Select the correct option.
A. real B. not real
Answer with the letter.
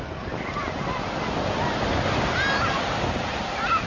A